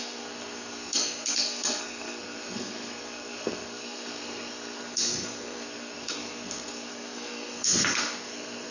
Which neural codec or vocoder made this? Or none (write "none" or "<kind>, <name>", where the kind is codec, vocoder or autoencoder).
codec, SNAC